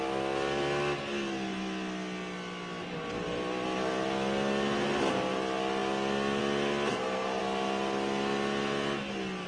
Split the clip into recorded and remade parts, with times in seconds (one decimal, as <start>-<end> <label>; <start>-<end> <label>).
0.0-6.9 recorded; 6.9-7.4 remade; 7.4-9.5 recorded